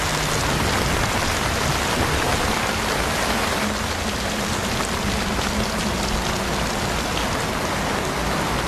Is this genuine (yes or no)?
yes